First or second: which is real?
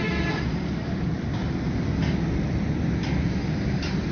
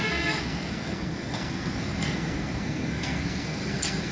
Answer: first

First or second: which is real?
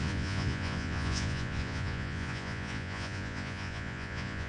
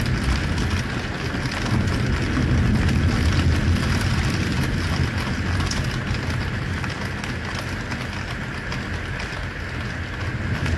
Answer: second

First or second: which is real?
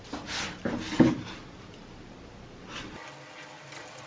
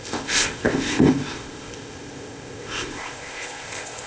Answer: first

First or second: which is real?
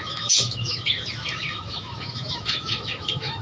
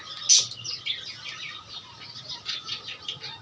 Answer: second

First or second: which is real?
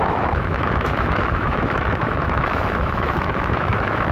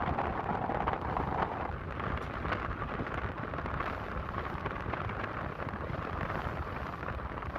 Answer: second